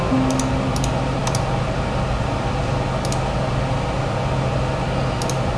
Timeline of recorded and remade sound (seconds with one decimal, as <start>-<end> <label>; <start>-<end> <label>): 0.0-5.6 recorded